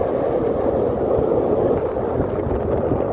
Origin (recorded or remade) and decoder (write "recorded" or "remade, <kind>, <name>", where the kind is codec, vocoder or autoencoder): recorded